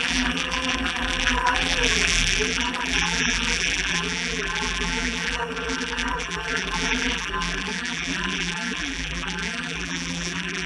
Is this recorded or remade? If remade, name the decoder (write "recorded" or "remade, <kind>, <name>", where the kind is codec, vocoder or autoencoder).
remade, vocoder, BigVGAN v2